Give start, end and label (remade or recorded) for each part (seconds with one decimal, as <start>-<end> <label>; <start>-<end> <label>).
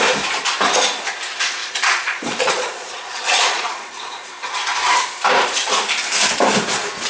0.0-1.6 recorded; 1.6-4.3 remade; 4.3-7.1 recorded